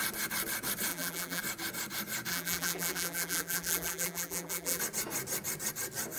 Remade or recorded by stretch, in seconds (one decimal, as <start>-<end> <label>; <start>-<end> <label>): 0.0-0.9 recorded; 0.9-1.4 remade; 1.4-2.3 recorded; 2.3-4.8 remade; 4.8-6.2 recorded